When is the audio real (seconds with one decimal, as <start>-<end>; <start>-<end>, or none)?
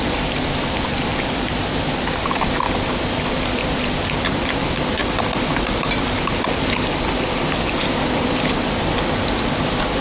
5.0-6.9